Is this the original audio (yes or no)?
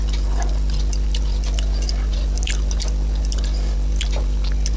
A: yes